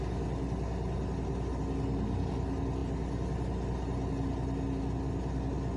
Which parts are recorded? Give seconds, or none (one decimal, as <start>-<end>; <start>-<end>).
0.0-5.8

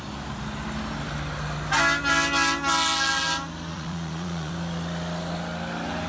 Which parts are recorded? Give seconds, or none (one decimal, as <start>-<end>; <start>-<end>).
0.0-3.7; 4.5-6.1

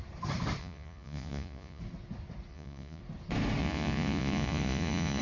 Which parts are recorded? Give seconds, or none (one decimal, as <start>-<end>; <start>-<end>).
0.0-0.6; 1.8-2.5; 3.0-3.6